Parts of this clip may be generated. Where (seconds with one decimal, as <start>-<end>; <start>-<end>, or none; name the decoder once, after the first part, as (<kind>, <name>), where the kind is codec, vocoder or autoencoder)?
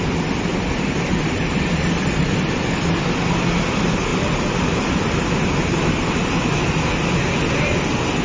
0.5-2.9 (vocoder, BigVGAN v2); 4.1-5.3